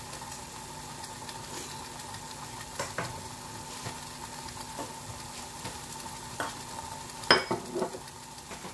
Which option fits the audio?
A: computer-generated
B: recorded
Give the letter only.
B